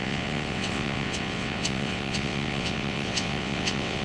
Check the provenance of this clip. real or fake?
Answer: fake